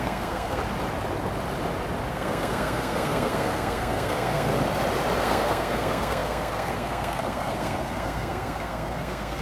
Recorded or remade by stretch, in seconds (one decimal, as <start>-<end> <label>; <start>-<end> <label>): 0.0-0.6 remade; 0.6-2.1 recorded; 2.1-4.5 remade; 4.5-5.2 recorded; 5.2-9.4 remade